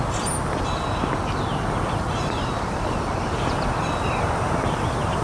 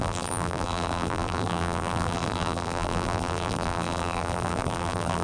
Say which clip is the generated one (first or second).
second